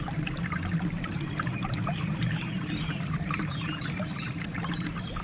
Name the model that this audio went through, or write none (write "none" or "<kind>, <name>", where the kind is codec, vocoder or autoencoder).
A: vocoder, BigVGAN v2